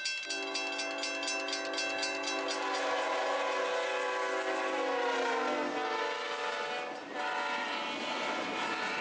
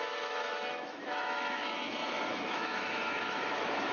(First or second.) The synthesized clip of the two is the second